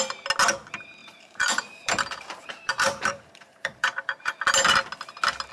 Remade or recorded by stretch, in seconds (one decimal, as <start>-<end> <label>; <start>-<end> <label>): 0.0-1.0 recorded; 1.0-4.3 remade; 4.3-5.5 recorded